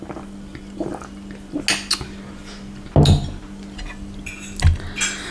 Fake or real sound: real